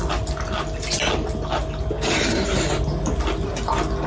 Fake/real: real